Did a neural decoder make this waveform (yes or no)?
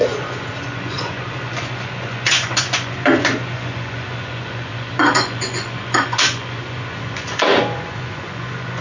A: yes